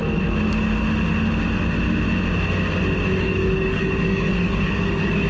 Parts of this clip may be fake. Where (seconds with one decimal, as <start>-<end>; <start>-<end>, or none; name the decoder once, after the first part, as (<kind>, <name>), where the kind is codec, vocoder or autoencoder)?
3.2-5.3 (codec, DAC)